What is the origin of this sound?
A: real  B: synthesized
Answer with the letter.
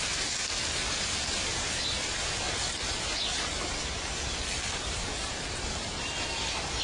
A